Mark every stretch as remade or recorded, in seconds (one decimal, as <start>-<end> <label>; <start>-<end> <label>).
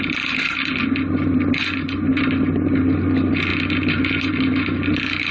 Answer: 0.0-5.3 recorded